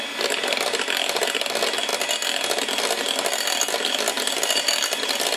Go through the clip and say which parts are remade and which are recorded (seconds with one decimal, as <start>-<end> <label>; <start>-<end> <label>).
0.0-5.4 recorded